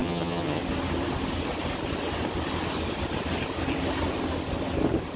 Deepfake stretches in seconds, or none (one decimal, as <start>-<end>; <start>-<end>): 0.0-0.6